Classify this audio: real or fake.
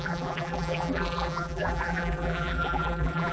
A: fake